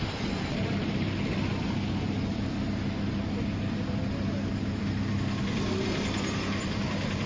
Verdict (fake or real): real